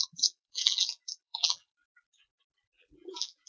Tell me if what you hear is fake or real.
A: fake